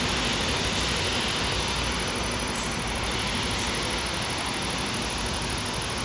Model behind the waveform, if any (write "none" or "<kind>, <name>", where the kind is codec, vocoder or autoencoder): none